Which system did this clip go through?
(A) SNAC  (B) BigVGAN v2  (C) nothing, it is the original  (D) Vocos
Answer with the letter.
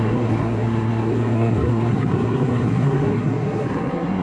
A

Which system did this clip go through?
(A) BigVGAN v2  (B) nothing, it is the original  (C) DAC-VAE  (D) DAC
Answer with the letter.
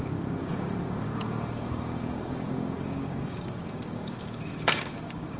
D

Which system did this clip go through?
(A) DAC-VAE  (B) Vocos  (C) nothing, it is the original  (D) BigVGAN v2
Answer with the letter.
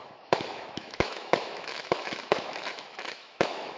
A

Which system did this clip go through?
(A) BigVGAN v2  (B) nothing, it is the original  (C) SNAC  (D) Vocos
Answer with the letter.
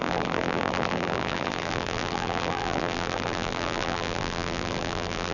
A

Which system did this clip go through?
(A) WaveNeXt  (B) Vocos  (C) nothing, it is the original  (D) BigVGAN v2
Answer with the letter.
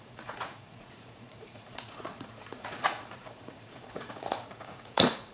B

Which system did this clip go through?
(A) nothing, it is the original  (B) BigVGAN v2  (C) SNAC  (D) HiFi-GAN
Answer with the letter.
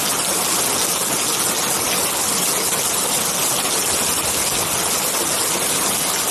A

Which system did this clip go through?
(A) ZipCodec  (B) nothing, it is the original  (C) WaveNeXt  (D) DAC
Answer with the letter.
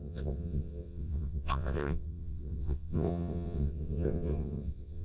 C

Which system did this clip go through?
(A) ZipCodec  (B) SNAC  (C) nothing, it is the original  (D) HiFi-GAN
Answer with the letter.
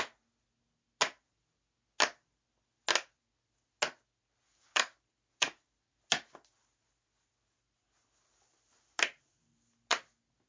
C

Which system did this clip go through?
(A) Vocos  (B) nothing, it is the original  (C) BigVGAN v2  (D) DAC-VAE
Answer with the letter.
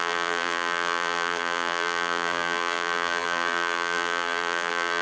C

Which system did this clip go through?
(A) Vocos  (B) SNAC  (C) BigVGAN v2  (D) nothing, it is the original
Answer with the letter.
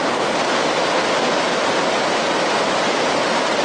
D